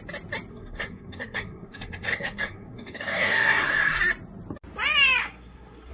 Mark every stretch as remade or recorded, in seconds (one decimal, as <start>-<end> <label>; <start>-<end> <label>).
0.0-0.5 recorded; 0.5-4.0 remade; 4.0-5.2 recorded; 5.2-5.9 remade

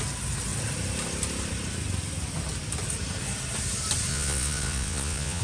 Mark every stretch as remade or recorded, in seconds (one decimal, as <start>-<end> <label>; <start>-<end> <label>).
0.0-4.1 recorded; 4.1-5.4 remade

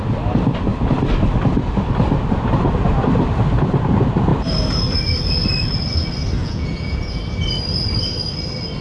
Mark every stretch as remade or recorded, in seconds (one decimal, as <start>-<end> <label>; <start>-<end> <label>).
0.0-6.4 recorded; 6.4-7.2 remade; 7.2-8.8 recorded

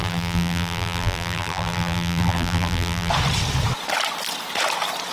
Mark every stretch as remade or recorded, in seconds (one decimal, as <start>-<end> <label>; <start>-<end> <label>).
0.0-3.1 remade; 3.1-5.1 recorded